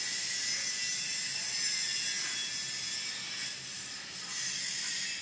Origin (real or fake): real